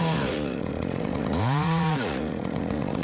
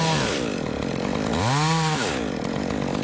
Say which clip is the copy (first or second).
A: first